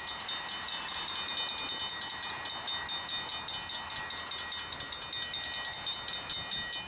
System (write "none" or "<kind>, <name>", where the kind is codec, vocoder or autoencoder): none